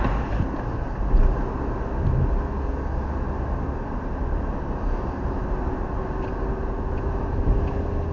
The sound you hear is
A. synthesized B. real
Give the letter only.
B